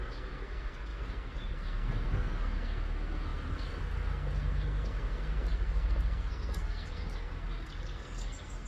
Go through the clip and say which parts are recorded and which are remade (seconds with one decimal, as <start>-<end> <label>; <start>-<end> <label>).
0.0-8.7 remade